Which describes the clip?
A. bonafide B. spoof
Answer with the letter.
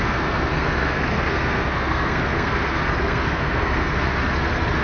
B